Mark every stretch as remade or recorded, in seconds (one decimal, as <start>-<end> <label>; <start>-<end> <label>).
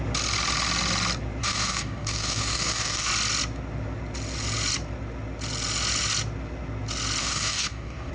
0.0-1.4 recorded; 1.4-3.1 remade; 3.1-7.2 recorded; 7.2-8.1 remade